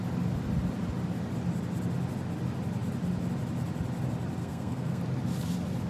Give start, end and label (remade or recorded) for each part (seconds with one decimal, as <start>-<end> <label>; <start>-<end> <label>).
0.0-4.4 recorded; 4.4-5.0 remade; 5.0-5.9 recorded